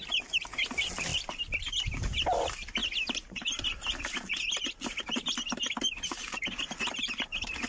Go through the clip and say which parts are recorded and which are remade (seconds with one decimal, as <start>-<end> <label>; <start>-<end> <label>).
0.0-1.1 recorded; 1.1-1.9 remade; 1.9-7.7 recorded